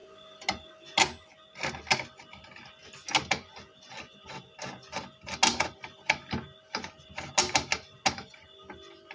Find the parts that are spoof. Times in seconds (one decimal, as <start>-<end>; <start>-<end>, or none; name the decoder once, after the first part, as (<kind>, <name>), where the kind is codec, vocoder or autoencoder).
none